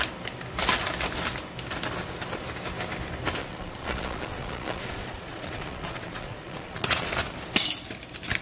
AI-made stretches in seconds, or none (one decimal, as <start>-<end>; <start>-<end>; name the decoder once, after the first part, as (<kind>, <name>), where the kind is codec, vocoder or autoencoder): 3.4-7.1 (vocoder, Vocos)

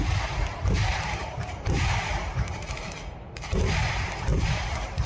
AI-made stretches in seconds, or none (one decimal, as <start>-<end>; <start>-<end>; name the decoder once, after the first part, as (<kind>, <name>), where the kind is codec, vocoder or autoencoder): 0.8-3.9 (vocoder, BigVGAN v2); 4.3-5.1

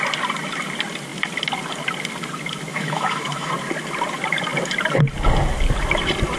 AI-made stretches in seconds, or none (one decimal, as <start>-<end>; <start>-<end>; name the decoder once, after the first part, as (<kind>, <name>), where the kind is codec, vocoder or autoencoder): 2.7-3.5 (autoencoder, DAC-VAE)

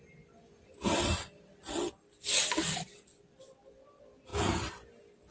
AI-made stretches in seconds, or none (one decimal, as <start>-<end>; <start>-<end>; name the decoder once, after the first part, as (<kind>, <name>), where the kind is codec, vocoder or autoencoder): none

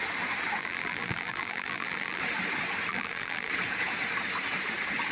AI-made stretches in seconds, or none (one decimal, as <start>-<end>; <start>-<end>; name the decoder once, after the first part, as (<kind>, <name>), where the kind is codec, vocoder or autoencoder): 0.6-2.2 (vocoder, BigVGAN v2); 2.9-3.5

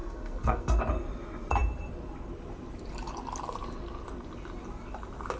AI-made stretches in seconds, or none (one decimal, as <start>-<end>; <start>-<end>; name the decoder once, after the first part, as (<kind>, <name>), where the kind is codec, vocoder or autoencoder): 0.0-0.8 (codec, SNAC)

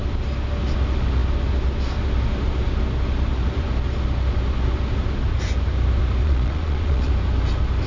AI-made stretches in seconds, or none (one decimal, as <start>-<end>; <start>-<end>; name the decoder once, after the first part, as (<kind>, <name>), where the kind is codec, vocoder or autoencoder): 6.2-7.1 (vocoder, Vocos)